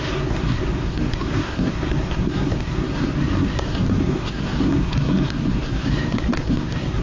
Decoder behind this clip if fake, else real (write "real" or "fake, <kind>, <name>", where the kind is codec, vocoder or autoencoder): fake, codec, SNAC